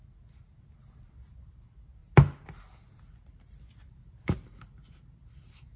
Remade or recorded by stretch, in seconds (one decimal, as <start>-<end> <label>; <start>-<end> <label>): 0.0-5.8 recorded